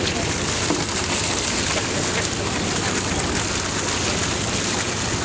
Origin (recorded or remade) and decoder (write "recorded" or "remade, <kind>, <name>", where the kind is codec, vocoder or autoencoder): recorded